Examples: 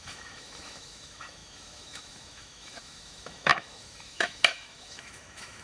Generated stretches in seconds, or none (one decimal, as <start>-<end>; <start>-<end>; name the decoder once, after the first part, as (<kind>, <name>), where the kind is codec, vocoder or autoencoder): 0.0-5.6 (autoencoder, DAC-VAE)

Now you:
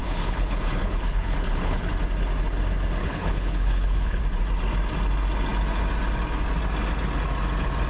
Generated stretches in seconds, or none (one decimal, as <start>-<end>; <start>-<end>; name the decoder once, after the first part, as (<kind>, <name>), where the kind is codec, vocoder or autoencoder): 0.0-1.9 (codec, HILCodec); 3.0-4.2

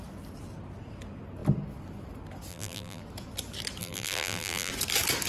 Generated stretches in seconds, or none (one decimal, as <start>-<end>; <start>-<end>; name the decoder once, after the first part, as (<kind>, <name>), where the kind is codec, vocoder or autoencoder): 2.5-3.0 (vocoder, BigVGAN v2); 3.8-4.7

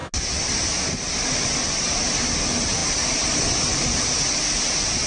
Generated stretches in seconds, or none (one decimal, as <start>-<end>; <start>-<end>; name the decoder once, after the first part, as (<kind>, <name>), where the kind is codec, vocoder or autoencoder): none